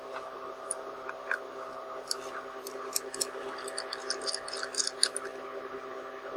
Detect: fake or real real